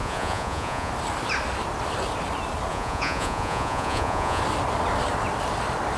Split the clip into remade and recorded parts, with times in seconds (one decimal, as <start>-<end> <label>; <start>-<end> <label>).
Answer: 0.0-0.9 remade; 0.9-2.7 recorded; 2.7-4.4 remade; 4.4-6.0 recorded